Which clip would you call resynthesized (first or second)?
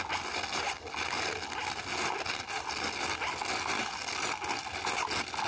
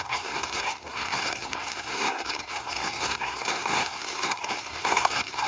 second